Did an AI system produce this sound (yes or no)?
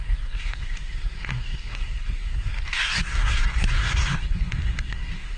yes